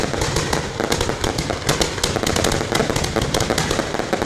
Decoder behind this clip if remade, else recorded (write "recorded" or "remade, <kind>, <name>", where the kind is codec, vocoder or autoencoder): recorded